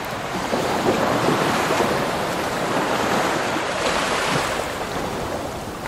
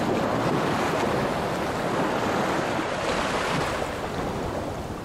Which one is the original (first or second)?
second